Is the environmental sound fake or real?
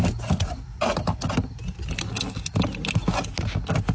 real